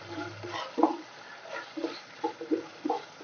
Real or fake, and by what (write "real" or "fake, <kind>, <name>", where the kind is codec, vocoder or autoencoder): real